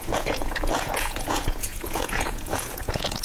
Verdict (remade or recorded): remade